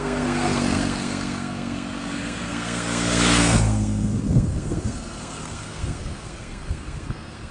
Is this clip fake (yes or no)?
yes